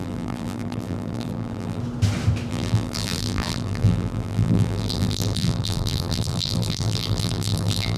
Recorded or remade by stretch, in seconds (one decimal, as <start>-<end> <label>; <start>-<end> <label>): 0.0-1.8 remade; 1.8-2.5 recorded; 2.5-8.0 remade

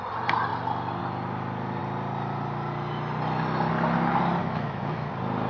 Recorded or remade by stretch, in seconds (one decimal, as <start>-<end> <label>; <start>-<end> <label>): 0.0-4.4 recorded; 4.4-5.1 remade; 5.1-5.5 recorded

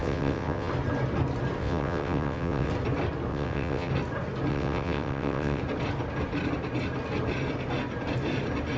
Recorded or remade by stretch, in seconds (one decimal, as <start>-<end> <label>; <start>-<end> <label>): 0.0-0.7 remade; 0.7-1.6 recorded; 1.6-2.7 remade; 2.7-3.3 recorded; 3.3-3.9 remade; 3.9-4.5 recorded; 4.5-5.6 remade; 5.6-8.8 recorded

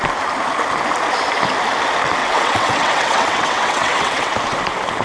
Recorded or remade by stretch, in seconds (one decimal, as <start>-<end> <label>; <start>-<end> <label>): 0.0-2.2 recorded; 2.2-4.3 remade; 4.3-5.0 recorded

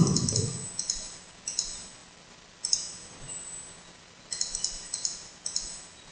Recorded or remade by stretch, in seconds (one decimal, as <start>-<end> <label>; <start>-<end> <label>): 0.0-6.1 recorded

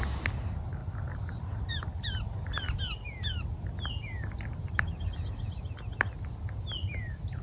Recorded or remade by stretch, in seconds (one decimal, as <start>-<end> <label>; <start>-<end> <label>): 0.0-7.4 recorded

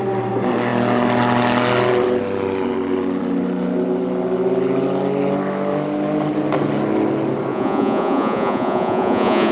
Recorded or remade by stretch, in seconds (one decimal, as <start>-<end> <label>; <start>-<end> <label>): 0.0-7.5 recorded; 7.5-9.5 remade